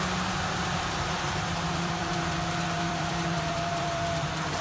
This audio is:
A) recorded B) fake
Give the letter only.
B